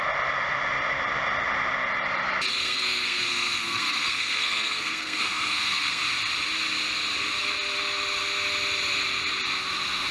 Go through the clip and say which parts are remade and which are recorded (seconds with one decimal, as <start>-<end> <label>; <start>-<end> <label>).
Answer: 0.0-2.5 recorded; 2.5-6.0 remade; 6.0-10.1 recorded